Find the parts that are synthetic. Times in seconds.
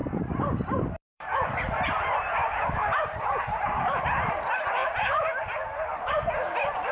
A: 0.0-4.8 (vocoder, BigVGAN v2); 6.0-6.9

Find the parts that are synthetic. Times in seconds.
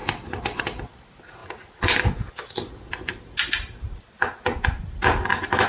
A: none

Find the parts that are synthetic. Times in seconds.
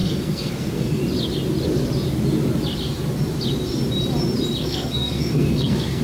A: 0.0-1.0 (codec, SNAC); 4.6-6.0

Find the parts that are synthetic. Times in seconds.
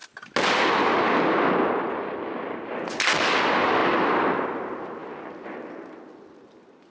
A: none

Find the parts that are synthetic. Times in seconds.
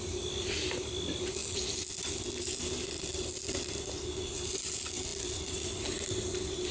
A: none